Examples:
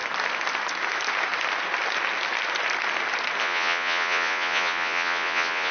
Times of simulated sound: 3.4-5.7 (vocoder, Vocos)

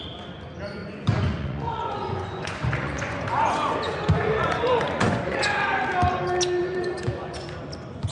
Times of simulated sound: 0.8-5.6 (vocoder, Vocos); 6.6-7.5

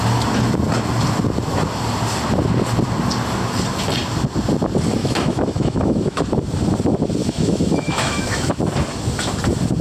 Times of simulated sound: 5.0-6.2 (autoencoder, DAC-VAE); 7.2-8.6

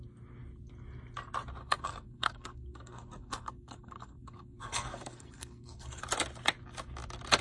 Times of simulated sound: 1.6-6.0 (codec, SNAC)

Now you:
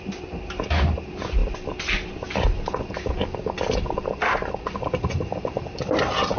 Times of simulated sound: none

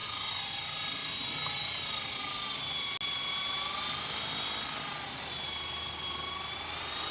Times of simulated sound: 0.0-0.6 (vocoder, BigVGAN v2)

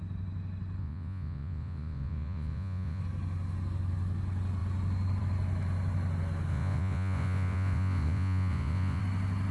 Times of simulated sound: 0.8-3.0 (vocoder, Vocos); 6.5-9.0